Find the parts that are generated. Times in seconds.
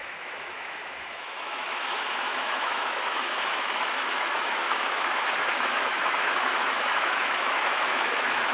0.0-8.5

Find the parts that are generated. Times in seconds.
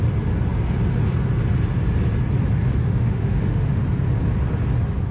2.8-3.8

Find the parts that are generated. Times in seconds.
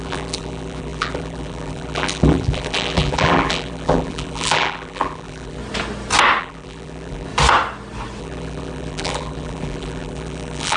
0.0-5.6; 6.4-7.3; 8.2-10.8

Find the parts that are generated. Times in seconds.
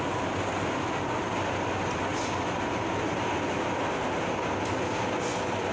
none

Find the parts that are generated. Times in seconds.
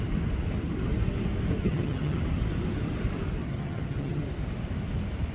1.6-2.2; 3.4-4.2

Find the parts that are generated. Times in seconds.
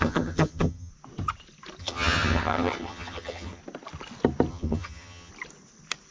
0.0-0.9; 1.8-3.6; 4.5-5.3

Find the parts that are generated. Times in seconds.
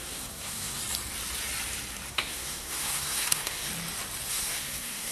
0.0-0.8; 2.1-3.7; 4.3-5.1